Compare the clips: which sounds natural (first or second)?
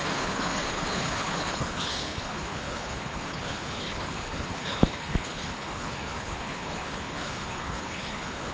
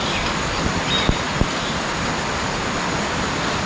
second